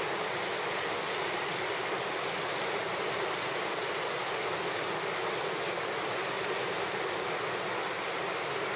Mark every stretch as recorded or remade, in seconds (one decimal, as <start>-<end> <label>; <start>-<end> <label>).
0.0-8.8 recorded